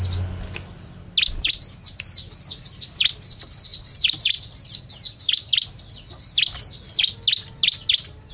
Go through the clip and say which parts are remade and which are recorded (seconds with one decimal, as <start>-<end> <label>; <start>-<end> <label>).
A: 0.0-3.7 recorded; 3.7-4.9 remade; 4.9-8.3 recorded